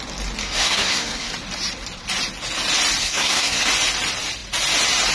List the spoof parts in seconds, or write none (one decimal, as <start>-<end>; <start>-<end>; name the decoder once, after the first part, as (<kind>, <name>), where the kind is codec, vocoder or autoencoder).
0.4-1.3 (codec, SNAC); 3.0-3.6